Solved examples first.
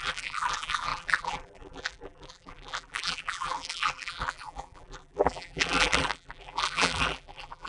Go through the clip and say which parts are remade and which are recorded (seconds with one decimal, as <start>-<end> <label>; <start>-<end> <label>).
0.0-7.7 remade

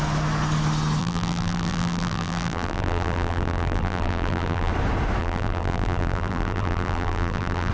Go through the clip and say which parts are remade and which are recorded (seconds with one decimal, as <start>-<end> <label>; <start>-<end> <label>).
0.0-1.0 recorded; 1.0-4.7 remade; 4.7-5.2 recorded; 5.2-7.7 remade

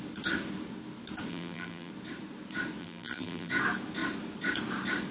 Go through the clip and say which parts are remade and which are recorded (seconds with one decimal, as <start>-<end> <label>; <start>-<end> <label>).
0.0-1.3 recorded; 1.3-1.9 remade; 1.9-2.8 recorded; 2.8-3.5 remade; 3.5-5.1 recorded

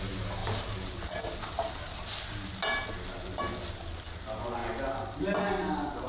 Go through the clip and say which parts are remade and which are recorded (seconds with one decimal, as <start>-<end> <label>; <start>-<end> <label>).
0.0-6.1 recorded

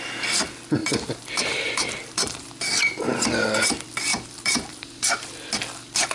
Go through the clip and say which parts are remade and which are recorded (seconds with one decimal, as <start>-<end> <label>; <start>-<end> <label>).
0.0-0.8 recorded; 0.8-2.5 remade; 2.5-4.1 recorded; 4.1-5.3 remade; 5.3-6.1 recorded

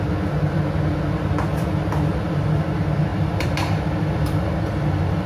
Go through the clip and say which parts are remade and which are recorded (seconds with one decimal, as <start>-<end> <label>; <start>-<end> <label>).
0.0-2.1 recorded; 2.1-2.6 remade; 2.6-3.1 recorded; 3.1-5.3 remade

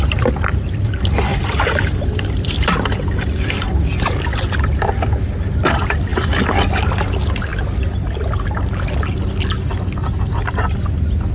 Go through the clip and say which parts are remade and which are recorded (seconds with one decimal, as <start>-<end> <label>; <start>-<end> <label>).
0.0-1.3 recorded; 1.3-3.9 remade; 3.9-6.1 recorded; 6.1-6.7 remade; 6.7-11.3 recorded